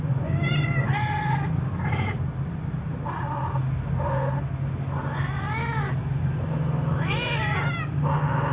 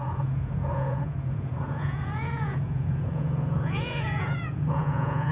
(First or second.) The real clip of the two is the first